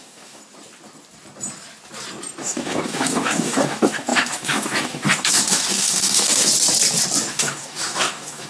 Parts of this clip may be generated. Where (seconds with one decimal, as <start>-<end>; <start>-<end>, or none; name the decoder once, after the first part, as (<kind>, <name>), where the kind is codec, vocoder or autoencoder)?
0.0-0.4 (codec, DAC); 2.4-6.5; 7.3-8.5